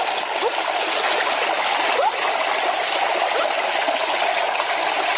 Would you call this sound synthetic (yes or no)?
no